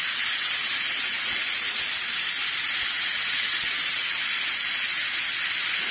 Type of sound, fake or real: real